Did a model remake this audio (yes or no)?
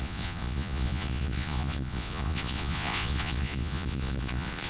yes